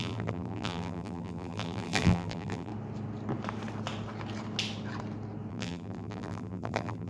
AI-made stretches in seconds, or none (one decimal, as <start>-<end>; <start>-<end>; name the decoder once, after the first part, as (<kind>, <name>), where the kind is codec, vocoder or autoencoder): 0.0-2.7 (vocoder, BigVGAN v2); 5.5-7.1